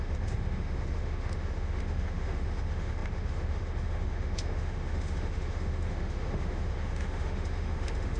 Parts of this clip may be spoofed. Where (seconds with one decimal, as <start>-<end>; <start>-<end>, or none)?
0.0-8.2